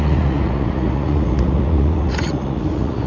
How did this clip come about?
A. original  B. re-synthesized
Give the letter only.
B